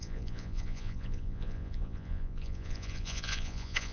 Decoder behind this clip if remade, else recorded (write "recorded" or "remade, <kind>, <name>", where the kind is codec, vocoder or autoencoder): remade, vocoder, Vocos